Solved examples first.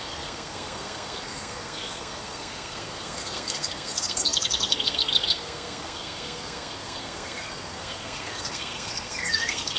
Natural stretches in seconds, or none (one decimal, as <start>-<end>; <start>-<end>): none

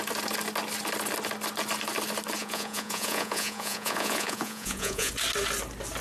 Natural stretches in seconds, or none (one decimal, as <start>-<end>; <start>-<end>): 0.0-2.4; 5.1-6.0

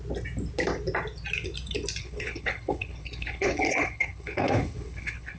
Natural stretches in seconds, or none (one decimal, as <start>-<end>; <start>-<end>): 0.0-2.0

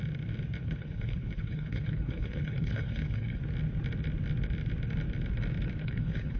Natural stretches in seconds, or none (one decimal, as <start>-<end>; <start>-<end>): 0.0-0.6; 3.4-5.8